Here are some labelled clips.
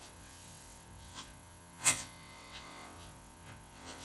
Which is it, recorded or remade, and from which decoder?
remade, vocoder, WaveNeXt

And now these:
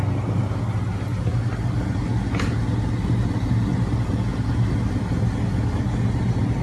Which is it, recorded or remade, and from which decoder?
recorded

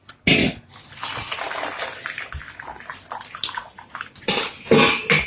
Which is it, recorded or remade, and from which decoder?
recorded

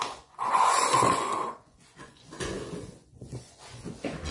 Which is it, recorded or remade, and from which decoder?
remade, vocoder, Vocos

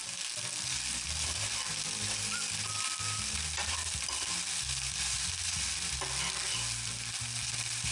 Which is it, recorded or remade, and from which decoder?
recorded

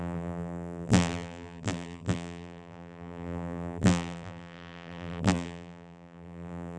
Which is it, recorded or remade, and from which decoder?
remade, vocoder, BigVGAN v2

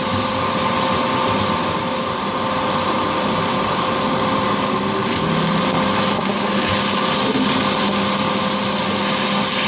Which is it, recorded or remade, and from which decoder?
remade, vocoder, BigVGAN v2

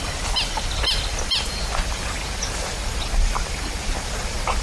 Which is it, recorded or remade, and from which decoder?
recorded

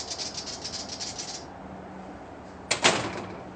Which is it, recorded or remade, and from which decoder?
recorded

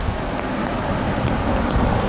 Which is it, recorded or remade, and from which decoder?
recorded